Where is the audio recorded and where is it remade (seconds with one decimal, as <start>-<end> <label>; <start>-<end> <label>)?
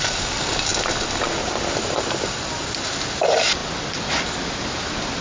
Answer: 0.0-5.2 recorded